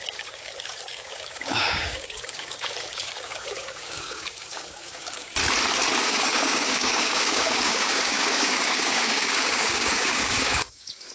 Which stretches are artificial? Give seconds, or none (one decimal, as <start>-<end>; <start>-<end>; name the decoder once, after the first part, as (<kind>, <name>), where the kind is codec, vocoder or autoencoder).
0.0-5.4 (codec, DAC); 6.0-11.1

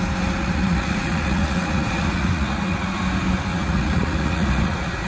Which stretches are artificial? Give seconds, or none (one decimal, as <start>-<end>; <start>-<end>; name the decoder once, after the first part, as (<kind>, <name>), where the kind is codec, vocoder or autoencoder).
0.4-3.0 (vocoder, Vocos); 3.5-5.1

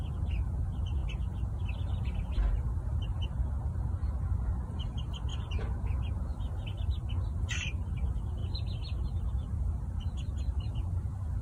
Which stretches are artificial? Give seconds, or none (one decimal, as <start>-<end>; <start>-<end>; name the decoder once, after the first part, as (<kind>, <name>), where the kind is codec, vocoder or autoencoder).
none

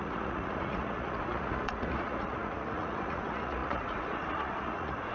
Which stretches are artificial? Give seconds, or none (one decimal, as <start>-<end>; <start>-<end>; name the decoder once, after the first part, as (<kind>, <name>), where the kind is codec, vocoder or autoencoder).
0.0-5.1 (vocoder, Vocos)

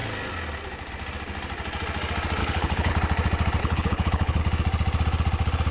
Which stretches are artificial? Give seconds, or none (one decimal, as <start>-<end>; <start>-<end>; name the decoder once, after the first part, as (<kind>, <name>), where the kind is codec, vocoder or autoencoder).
2.4-2.9 (codec, HILCodec); 3.6-4.4

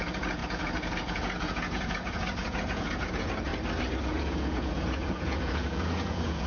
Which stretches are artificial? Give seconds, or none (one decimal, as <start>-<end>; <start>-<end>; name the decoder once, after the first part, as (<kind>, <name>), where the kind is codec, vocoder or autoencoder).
0.0-3.5 (vocoder, Vocos); 4.0-6.5

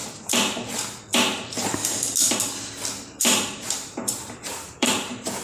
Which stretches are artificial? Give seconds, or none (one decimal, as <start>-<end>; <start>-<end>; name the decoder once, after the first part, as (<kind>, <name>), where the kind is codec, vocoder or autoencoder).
3.2-5.4 (vocoder, BigVGAN v2)

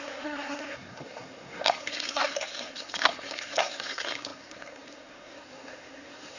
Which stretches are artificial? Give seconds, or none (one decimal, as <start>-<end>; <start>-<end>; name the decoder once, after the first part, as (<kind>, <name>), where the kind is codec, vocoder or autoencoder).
0.0-6.4 (codec, SNAC)